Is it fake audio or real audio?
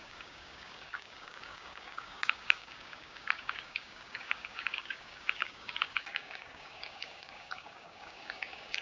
fake